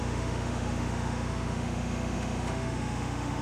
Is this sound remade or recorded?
remade